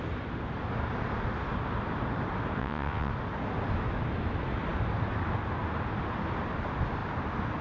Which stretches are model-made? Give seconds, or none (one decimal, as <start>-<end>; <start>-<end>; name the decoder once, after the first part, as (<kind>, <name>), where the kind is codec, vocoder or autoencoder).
2.6-3.1 (vocoder, WaveNeXt)